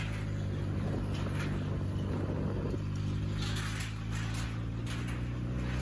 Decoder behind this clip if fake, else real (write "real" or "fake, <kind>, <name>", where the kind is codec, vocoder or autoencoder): real